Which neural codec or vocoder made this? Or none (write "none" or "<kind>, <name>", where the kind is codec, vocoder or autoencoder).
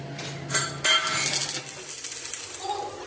none